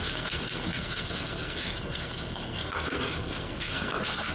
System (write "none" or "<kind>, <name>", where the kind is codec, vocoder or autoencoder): codec, SNAC